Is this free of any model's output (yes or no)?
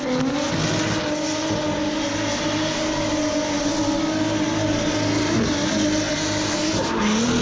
yes